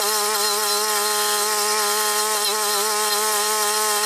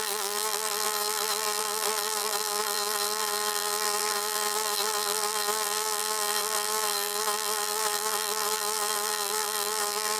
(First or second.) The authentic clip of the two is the first